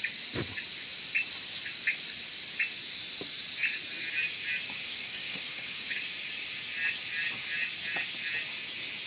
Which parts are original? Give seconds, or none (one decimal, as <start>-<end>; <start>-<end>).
0.0-4.9; 6.0-9.1